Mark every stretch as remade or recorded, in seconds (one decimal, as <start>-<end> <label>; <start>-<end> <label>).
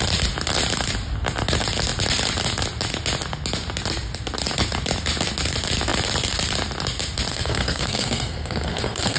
0.0-7.3 recorded; 7.3-9.2 remade